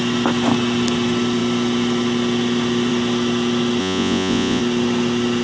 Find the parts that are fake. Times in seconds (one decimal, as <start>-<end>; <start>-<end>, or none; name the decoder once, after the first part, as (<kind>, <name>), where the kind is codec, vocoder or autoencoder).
3.8-4.6 (vocoder, Vocos)